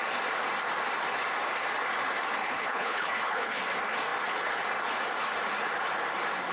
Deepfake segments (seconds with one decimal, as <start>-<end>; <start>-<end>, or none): 2.4-3.6